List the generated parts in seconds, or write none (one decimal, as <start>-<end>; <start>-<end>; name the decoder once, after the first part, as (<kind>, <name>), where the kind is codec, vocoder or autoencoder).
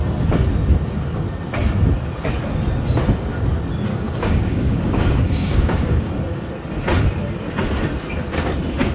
3.9-6.1 (codec, DAC)